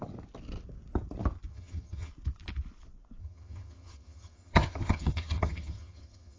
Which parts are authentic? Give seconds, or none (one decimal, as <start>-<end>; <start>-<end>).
0.0-1.5; 2.1-3.2